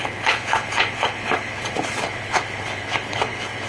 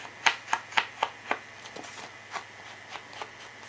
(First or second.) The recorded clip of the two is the second